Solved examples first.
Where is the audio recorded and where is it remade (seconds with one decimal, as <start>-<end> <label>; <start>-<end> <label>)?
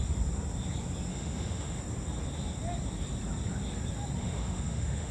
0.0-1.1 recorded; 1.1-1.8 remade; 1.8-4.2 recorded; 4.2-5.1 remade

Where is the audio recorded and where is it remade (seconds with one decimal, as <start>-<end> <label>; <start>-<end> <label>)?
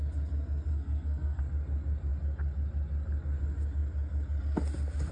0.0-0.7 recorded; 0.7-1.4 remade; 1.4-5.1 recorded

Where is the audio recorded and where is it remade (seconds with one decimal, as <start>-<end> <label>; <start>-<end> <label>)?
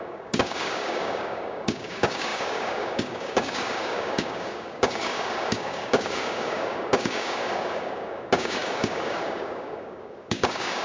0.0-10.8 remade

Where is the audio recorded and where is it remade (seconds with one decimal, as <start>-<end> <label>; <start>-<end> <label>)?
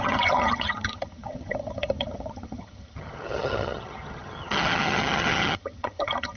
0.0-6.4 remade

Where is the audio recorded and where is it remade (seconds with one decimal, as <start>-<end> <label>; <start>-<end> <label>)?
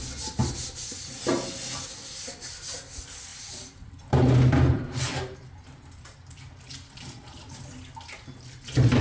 0.0-3.3 recorded; 3.3-4.2 remade; 4.2-4.7 recorded; 4.7-5.5 remade; 5.5-7.2 recorded; 7.2-9.0 remade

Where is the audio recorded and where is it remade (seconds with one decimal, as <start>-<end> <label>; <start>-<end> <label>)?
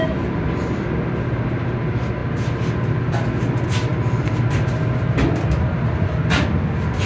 0.0-7.1 recorded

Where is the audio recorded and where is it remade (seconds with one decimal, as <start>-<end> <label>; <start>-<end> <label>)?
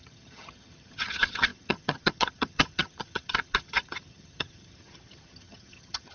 0.0-6.1 remade